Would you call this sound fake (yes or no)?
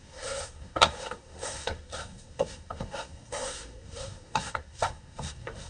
yes